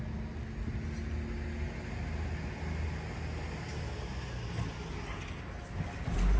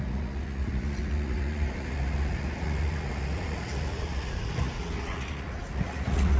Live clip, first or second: first